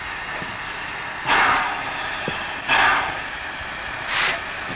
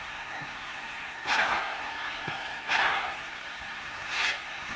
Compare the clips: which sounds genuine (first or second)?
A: first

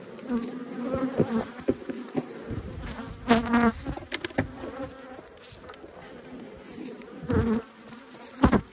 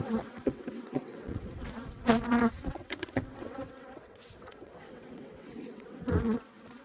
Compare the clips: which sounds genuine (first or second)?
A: first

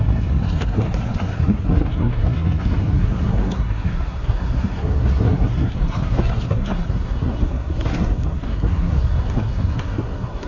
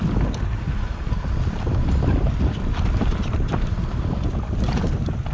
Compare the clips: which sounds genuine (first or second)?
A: second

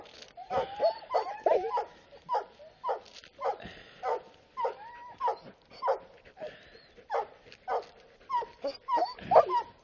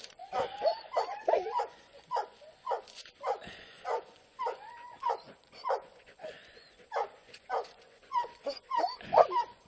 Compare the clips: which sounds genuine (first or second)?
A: first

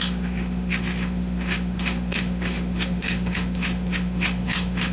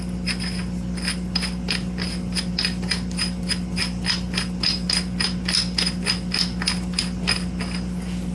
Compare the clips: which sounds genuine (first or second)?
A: second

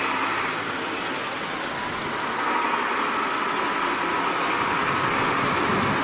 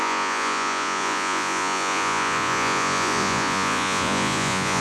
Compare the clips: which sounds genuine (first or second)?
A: first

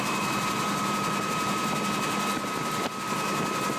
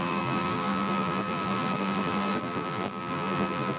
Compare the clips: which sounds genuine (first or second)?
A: first